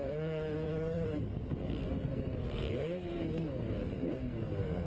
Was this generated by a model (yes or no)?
yes